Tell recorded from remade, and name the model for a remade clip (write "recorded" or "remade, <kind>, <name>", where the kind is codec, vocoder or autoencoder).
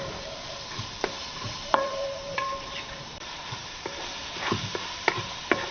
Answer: remade, vocoder, BigVGAN v2